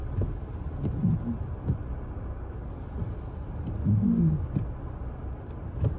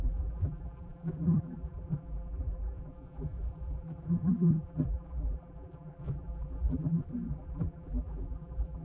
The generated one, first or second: second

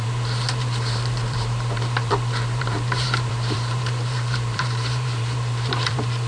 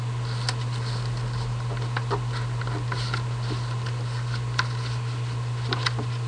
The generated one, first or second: first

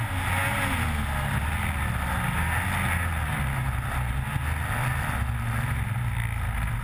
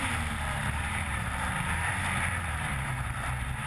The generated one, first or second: second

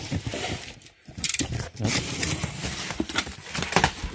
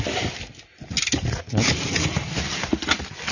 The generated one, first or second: first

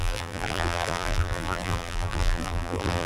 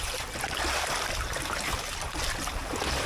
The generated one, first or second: first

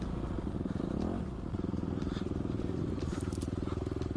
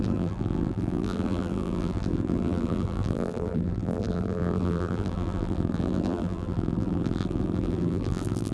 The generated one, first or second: second